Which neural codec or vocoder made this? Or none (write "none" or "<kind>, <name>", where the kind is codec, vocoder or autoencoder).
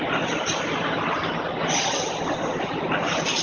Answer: none